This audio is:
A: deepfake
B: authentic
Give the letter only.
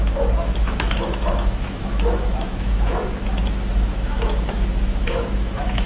A